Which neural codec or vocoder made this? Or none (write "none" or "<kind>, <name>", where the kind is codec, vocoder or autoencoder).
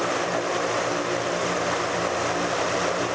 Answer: none